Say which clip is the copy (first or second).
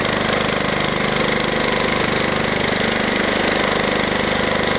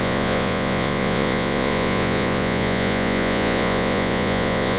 second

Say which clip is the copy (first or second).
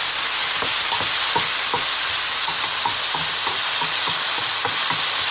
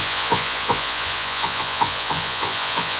second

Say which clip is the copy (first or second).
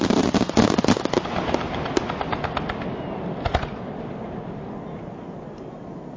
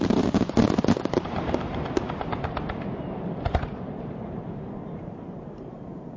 second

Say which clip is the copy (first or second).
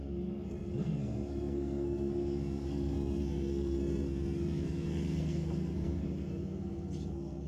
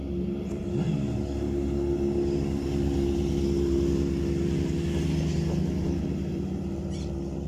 first